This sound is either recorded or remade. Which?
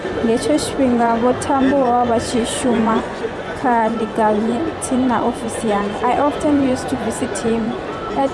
remade